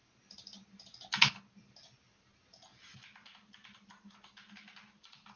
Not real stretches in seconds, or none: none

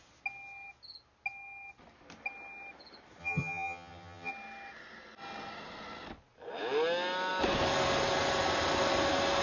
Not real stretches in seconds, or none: 3.2-4.3 (vocoder, HiFi-GAN)

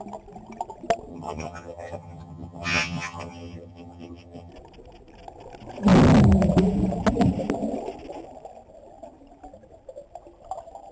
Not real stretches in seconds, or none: 1.1-4.5 (vocoder, HiFi-GAN)

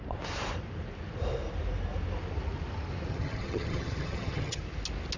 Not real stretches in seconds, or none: 3.1-4.6 (vocoder, HiFi-GAN)

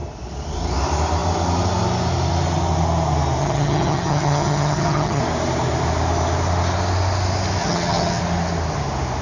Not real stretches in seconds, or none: 3.4-5.2 (vocoder, HiFi-GAN); 7.6-8.2